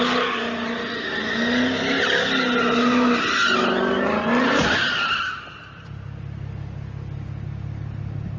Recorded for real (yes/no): yes